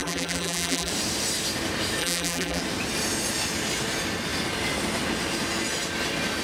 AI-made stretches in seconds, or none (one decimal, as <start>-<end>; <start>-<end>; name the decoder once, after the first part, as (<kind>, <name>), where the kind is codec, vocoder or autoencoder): 0.0-0.9 (vocoder, BigVGAN v2); 2.0-2.6